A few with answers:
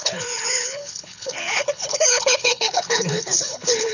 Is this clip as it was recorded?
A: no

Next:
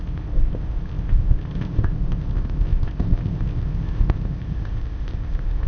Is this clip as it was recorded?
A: no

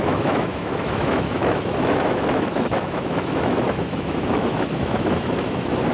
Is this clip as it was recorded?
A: no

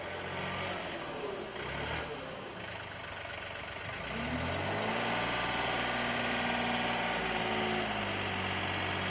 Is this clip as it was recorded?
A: yes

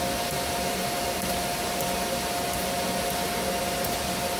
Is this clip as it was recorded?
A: yes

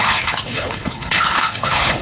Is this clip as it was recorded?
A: no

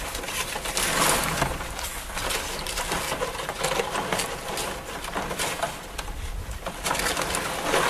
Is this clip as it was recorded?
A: yes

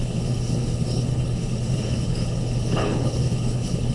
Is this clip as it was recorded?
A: no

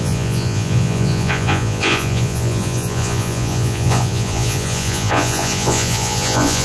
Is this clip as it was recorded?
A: no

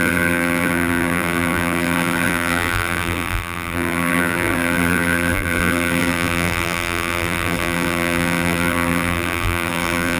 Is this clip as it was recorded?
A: no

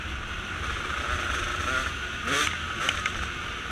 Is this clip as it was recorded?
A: yes